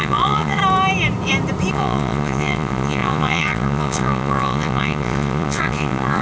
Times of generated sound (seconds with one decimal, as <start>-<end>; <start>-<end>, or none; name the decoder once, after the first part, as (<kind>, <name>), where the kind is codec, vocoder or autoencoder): 0.0-0.6 (vocoder, Vocos); 1.7-6.2